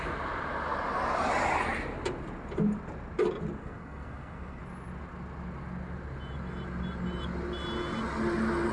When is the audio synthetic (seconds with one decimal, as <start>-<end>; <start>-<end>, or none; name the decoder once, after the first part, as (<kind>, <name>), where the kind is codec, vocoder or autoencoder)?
3.6-4.6 (codec, SNAC)